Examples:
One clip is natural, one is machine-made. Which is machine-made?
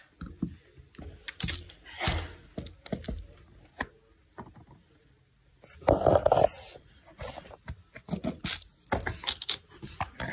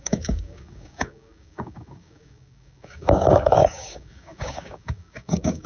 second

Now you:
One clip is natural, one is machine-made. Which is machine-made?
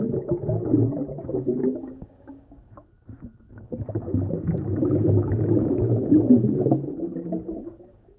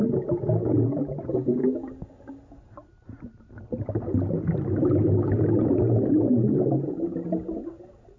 first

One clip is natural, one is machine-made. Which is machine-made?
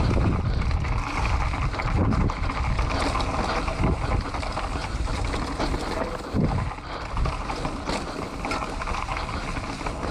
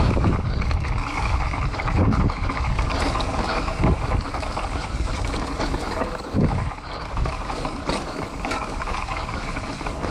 second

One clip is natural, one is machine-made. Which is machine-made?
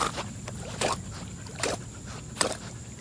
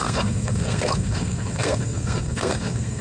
second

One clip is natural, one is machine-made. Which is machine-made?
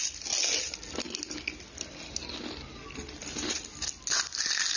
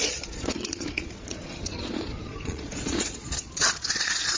second